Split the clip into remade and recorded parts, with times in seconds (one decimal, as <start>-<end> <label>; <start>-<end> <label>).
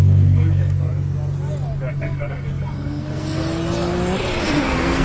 0.0-0.9 remade; 0.9-1.9 recorded; 1.9-3.4 remade; 3.4-4.4 recorded; 4.4-5.0 remade